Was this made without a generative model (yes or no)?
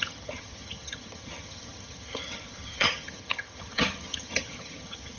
no